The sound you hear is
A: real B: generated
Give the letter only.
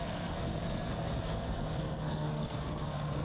B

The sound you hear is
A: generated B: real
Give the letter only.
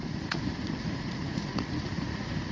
A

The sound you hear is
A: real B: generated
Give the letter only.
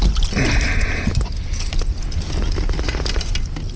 A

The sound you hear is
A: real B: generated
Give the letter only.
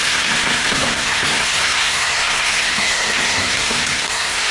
B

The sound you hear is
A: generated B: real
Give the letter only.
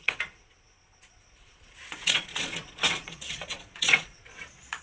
A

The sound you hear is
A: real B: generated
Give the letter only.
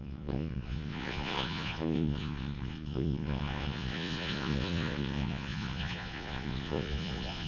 B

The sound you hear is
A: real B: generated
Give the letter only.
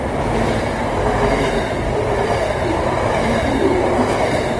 A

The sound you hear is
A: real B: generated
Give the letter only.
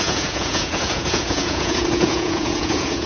B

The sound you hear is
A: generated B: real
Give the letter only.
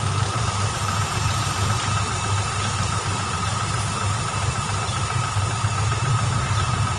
B